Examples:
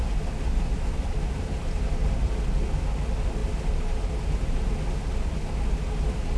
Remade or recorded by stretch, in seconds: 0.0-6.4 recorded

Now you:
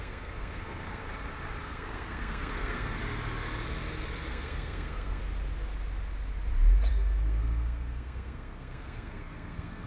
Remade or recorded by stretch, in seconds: 0.0-1.0 remade; 1.0-1.6 recorded; 1.6-3.0 remade; 3.0-4.3 recorded; 4.3-5.2 remade; 5.2-6.9 recorded; 6.9-9.9 remade

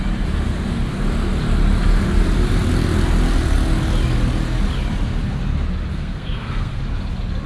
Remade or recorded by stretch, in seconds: 0.0-5.9 recorded; 5.9-6.8 remade; 6.8-7.5 recorded

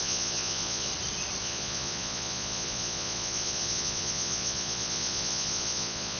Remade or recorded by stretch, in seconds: 0.0-0.9 remade; 0.9-1.4 recorded; 1.4-6.2 remade

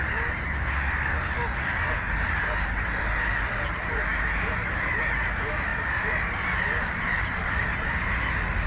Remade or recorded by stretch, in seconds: 0.0-8.7 recorded

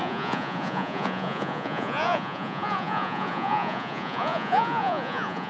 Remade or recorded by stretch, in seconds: 0.0-5.5 remade

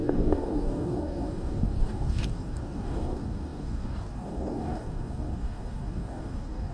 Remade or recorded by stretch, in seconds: 0.0-6.7 remade

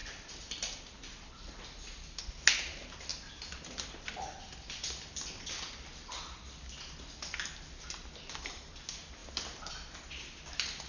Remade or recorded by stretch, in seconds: 0.0-2.2 remade; 2.2-10.9 recorded